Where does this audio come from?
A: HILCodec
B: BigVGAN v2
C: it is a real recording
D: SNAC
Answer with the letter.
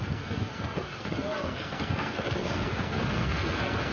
D